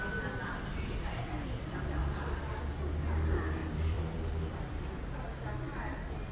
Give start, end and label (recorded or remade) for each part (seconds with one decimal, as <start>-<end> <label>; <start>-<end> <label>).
0.0-3.6 recorded; 3.6-5.0 remade; 5.0-6.3 recorded